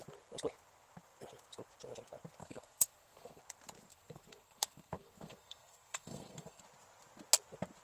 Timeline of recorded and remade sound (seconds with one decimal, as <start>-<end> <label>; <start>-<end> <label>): 0.0-2.4 recorded; 2.4-3.4 remade; 3.4-3.9 recorded; 3.9-6.6 remade; 6.6-7.8 recorded